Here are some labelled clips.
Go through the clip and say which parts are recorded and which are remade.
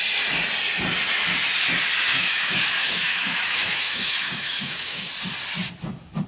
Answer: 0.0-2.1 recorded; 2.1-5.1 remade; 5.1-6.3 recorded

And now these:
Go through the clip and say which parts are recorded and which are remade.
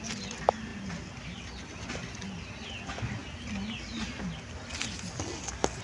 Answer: 0.0-5.8 recorded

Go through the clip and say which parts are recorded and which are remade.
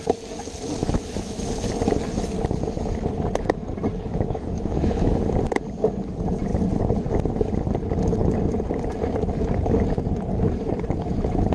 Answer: 0.0-0.8 recorded; 0.8-1.5 remade; 1.5-4.1 recorded; 4.1-5.2 remade; 5.2-11.5 recorded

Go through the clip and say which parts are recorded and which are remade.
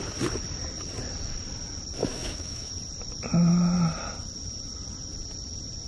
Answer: 0.0-2.1 recorded; 2.1-2.7 remade; 2.7-5.9 recorded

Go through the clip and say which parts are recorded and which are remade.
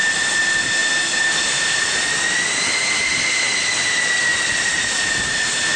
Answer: 0.0-5.8 recorded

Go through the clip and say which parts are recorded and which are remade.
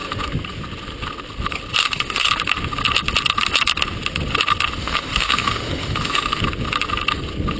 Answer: 0.0-1.8 recorded; 1.8-2.3 remade; 2.3-4.8 recorded; 4.8-6.4 remade; 6.4-7.6 recorded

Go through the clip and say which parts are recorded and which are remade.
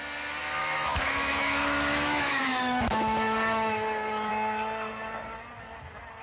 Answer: 0.0-0.6 recorded; 0.6-4.3 remade; 4.3-6.2 recorded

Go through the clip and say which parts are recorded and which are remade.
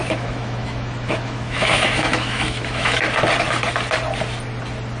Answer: 0.0-3.0 remade; 3.0-5.0 recorded